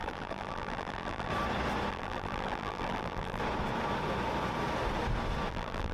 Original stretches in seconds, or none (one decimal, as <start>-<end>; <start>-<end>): 1.3-1.9; 3.4-5.5